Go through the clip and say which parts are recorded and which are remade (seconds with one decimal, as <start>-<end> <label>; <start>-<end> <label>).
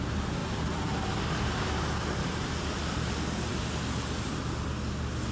0.0-0.4 recorded; 0.4-3.6 remade; 3.6-5.3 recorded